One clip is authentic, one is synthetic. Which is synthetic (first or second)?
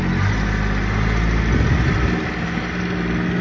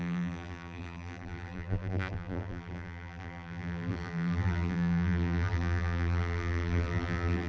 second